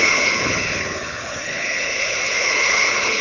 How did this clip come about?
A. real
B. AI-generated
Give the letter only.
B